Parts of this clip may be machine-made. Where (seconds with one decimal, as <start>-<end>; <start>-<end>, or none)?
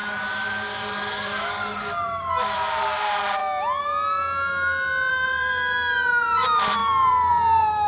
0.0-3.4; 5.1-7.9